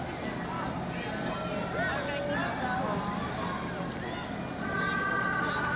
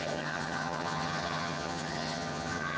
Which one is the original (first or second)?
first